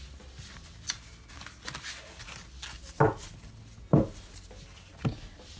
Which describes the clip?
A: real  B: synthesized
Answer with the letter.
A